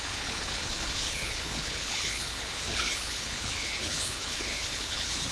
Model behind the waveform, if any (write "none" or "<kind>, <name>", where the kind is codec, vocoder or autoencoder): codec, HILCodec